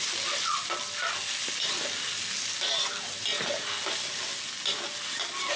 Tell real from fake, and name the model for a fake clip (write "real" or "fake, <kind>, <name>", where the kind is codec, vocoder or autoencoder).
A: real